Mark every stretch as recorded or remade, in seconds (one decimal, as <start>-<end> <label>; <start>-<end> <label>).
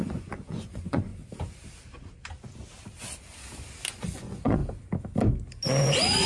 0.0-1.1 remade; 1.1-3.9 recorded; 3.9-4.6 remade; 4.6-5.8 recorded; 5.8-6.3 remade